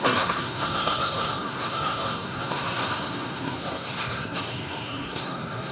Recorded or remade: remade